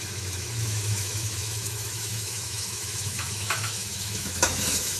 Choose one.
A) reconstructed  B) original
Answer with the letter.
A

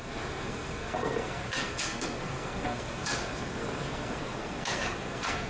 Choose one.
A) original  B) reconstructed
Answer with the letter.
B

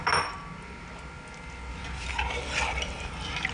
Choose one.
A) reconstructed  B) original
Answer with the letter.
B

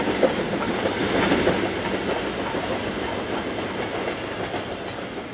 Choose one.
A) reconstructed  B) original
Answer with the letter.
B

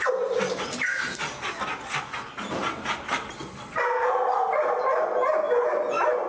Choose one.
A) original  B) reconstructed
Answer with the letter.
A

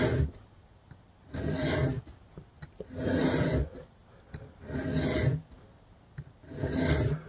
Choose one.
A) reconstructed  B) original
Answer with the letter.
B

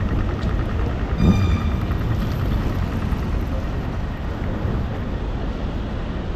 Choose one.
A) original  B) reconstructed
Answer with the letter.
A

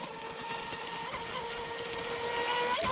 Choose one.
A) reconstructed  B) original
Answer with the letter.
B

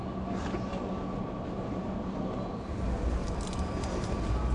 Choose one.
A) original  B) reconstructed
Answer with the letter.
A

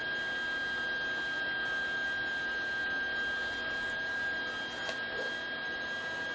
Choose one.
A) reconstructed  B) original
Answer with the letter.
B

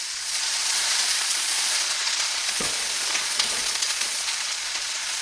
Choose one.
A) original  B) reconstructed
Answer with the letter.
B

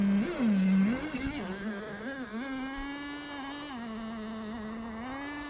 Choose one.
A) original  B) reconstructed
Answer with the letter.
A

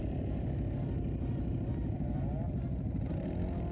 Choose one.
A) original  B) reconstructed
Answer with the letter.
A